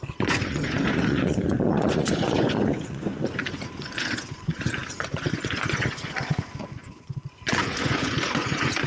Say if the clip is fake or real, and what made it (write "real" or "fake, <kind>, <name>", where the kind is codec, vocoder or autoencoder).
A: fake, vocoder, Vocos